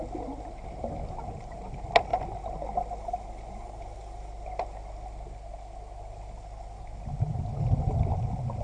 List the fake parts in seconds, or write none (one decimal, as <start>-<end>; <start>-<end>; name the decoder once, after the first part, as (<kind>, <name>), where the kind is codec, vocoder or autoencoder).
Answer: none